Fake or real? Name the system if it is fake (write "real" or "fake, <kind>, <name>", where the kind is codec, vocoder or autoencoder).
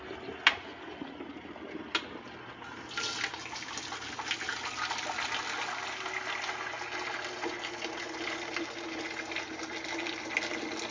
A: real